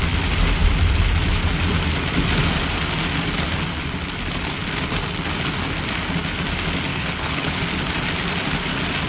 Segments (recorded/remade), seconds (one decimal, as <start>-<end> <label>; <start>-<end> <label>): 0.0-6.9 recorded; 6.9-7.6 remade; 7.6-9.1 recorded